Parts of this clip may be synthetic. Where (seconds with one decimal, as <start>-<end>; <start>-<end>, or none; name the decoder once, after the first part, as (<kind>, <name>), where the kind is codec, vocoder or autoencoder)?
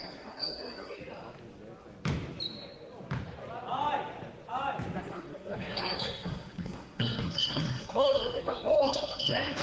0.0-1.0 (codec, SNAC); 5.0-9.6